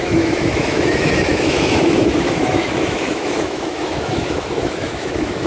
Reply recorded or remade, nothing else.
remade